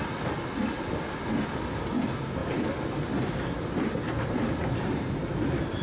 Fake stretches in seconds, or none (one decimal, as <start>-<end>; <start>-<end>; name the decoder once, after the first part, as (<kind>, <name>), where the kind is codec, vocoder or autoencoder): none